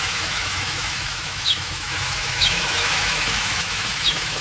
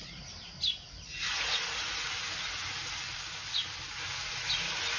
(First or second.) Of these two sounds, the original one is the second